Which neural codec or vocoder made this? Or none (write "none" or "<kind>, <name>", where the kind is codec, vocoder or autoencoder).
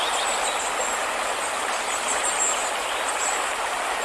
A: none